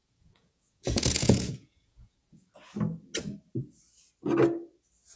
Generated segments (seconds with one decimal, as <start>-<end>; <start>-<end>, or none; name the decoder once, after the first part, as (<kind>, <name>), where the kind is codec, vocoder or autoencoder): 0.0-2.5 (vocoder, Vocos)